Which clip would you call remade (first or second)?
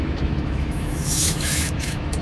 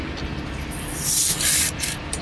first